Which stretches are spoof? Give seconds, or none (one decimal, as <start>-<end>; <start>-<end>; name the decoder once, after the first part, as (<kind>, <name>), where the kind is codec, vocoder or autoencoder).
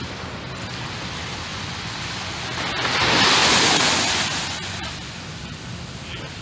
1.5-2.3 (vocoder, Vocos); 3.4-5.6